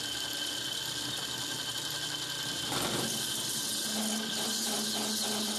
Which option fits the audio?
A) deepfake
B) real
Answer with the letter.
B